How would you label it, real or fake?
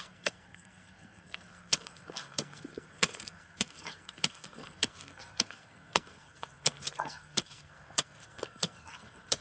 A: fake